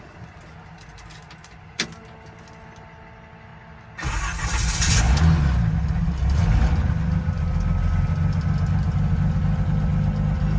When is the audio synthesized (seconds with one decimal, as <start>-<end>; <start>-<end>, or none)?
none